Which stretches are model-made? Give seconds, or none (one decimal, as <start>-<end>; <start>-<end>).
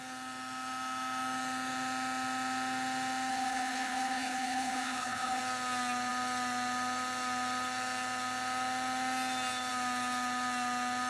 3.3-5.4